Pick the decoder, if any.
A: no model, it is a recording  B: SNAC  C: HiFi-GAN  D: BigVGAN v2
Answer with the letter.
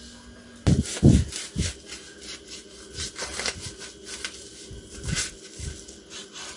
A